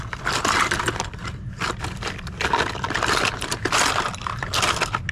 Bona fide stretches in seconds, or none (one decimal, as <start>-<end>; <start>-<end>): 0.0-5.1